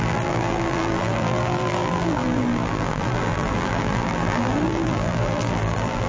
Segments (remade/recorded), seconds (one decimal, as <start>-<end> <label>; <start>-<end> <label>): 0.0-6.1 remade